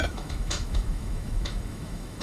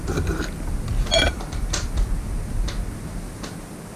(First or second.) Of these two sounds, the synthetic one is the first